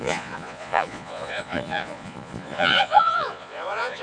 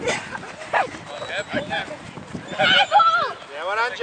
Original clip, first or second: second